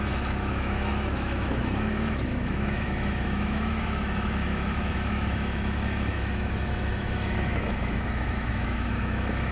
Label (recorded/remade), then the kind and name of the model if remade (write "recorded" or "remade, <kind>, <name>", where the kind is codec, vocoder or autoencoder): remade, autoencoder, DAC-VAE